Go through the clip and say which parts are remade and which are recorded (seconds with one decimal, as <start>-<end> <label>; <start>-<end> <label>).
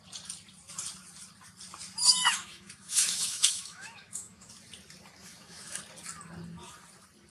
0.0-2.2 recorded; 2.2-4.5 remade; 4.5-5.2 recorded; 5.2-5.8 remade; 5.8-7.3 recorded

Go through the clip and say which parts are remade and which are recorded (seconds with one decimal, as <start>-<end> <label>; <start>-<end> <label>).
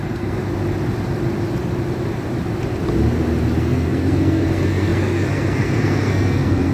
0.0-0.4 remade; 0.4-3.6 recorded; 3.6-6.7 remade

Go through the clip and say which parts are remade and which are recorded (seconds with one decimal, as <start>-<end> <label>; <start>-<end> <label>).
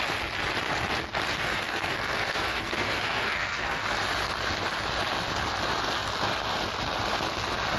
0.0-1.3 recorded; 1.3-3.8 remade; 3.8-7.8 recorded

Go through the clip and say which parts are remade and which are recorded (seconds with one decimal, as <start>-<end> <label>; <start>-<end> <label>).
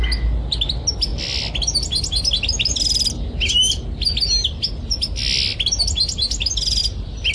0.0-7.3 recorded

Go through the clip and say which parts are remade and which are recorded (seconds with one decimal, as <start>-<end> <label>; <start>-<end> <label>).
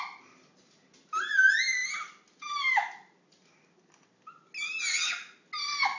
0.0-6.0 recorded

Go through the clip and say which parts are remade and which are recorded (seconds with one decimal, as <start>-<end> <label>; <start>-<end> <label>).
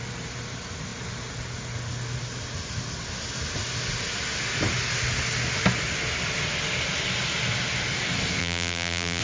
0.0-8.4 recorded; 8.4-9.2 remade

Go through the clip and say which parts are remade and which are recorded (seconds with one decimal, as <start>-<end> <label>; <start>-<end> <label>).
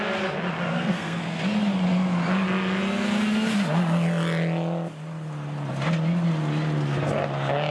0.0-0.7 recorded; 0.7-1.4 remade; 1.4-7.7 recorded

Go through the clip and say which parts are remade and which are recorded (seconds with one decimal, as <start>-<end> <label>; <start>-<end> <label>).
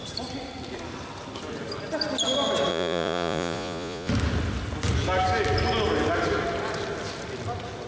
0.0-2.7 recorded; 2.7-4.1 remade; 4.1-7.9 recorded